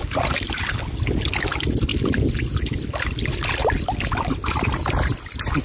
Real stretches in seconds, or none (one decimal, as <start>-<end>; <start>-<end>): 0.0-5.6